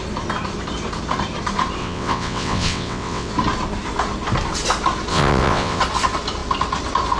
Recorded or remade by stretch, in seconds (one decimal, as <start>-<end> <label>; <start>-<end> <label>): 0.0-1.8 recorded; 1.8-3.3 remade; 3.3-5.1 recorded; 5.1-5.8 remade; 5.8-7.2 recorded